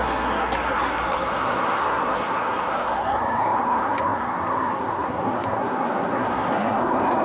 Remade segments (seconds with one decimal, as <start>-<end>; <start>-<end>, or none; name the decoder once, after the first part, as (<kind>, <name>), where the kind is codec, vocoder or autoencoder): 0.0-7.2 (codec, SNAC)